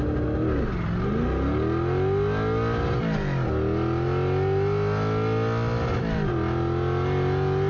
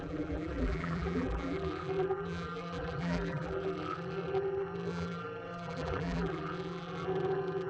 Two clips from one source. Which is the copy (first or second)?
second